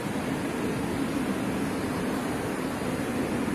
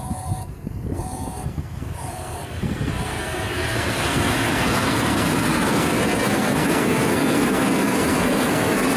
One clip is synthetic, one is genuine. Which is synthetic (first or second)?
second